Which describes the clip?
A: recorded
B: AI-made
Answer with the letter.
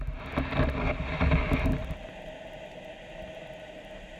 A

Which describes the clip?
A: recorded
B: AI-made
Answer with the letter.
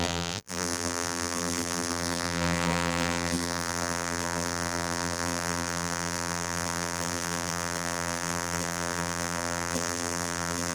B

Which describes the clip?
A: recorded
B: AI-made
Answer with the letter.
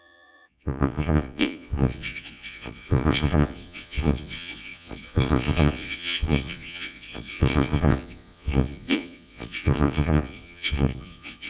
B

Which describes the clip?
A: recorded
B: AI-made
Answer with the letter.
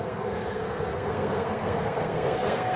B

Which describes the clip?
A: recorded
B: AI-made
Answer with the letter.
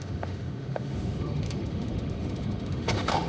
B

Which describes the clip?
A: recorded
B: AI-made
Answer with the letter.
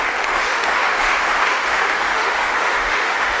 B